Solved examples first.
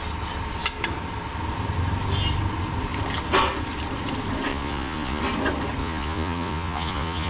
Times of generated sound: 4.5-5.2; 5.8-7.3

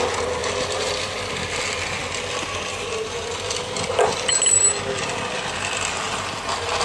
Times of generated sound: none

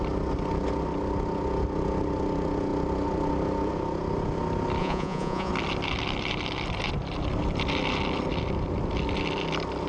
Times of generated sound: 4.8-5.5

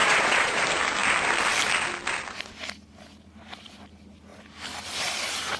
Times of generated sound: 0.0-0.6

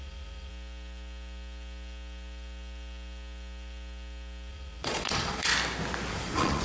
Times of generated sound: 0.0-0.5; 4.5-5.5; 6.1-6.6

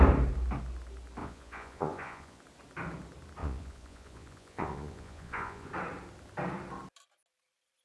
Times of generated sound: 1.2-2.4; 3.4-5.7

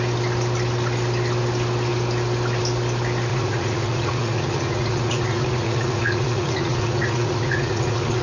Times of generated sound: 3.3-8.2

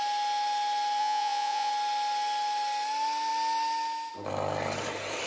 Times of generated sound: 1.0-1.7